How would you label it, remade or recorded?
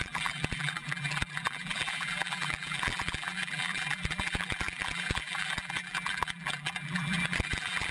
remade